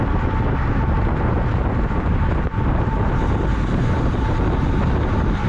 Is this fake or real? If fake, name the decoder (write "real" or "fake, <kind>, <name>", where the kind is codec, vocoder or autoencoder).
real